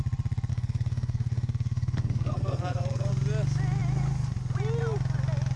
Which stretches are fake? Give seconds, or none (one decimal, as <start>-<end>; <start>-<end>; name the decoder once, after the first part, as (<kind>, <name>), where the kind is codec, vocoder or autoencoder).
0.5-3.1 (codec, SNAC)